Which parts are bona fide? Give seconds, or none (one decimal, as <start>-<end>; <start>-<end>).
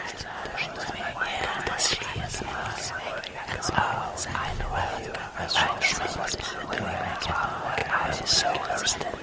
0.0-9.2